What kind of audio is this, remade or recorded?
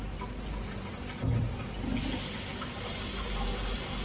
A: recorded